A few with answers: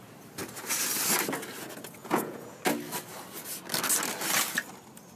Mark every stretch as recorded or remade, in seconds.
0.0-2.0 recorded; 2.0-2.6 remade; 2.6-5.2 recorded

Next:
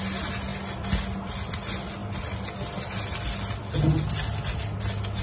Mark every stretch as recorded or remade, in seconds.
0.0-5.2 recorded

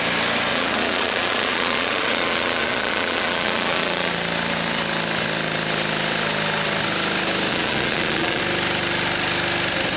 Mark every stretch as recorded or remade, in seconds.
0.0-0.5 recorded; 0.5-4.1 remade; 4.1-7.5 recorded; 7.5-8.4 remade; 8.4-10.0 recorded

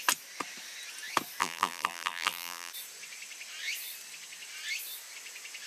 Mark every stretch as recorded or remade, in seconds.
0.0-1.4 recorded; 1.4-2.7 remade; 2.7-5.7 recorded

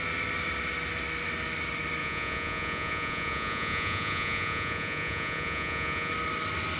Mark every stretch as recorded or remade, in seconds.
0.0-2.0 recorded; 2.0-6.1 remade; 6.1-6.8 recorded

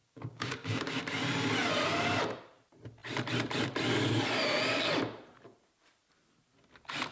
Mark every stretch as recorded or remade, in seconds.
0.0-1.0 remade; 1.0-7.1 recorded

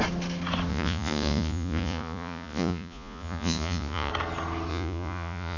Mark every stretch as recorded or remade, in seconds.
0.0-0.7 recorded; 0.7-4.1 remade; 4.1-4.7 recorded; 4.7-5.6 remade